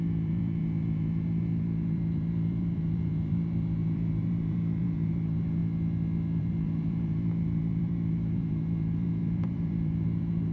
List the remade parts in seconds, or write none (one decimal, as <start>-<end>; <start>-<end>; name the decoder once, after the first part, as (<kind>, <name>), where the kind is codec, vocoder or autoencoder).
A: 0.0-5.6 (vocoder, BigVGAN v2); 6.4-10.5